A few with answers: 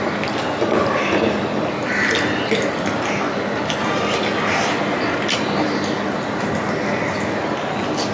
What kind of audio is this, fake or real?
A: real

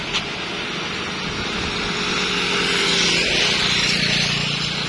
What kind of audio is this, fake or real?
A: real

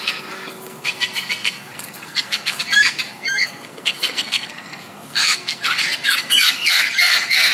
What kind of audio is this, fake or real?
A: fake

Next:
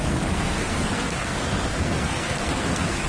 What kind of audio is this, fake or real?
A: fake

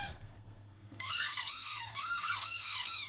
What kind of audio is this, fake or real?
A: fake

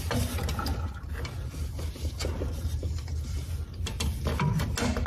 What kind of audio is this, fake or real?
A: real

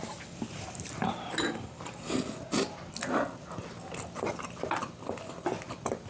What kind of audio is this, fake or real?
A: real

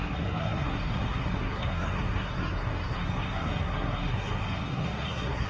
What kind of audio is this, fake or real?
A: fake